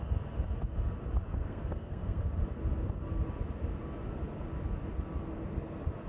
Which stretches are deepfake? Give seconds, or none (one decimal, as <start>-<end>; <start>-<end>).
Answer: 1.2-2.2